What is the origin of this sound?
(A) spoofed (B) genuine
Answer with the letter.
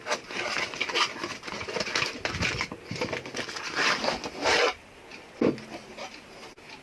B